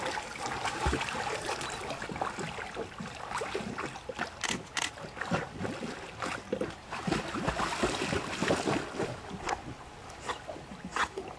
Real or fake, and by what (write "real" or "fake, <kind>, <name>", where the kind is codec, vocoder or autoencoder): real